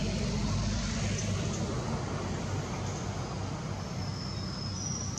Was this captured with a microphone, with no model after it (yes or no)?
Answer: yes